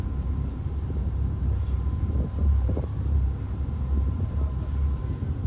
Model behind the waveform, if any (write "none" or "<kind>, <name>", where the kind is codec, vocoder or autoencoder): vocoder, BigVGAN v2